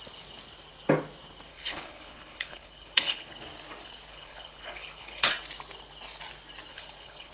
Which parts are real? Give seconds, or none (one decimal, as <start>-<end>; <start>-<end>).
0.0-1.5; 3.3-4.1; 5.3-6.7